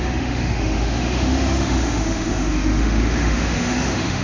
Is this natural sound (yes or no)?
no